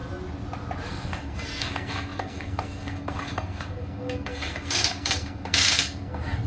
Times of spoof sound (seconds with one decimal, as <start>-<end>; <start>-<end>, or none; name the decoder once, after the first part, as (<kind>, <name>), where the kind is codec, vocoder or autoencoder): 0.9-6.5 (codec, SNAC)